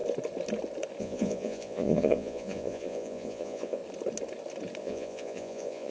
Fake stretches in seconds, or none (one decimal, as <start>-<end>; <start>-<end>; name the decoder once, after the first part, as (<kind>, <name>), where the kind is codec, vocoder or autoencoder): 1.0-3.8 (vocoder, Vocos); 4.8-5.9